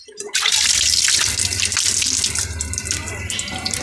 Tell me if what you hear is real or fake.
real